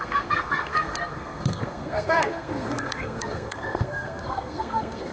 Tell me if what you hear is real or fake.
fake